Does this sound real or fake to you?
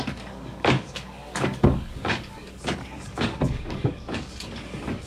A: fake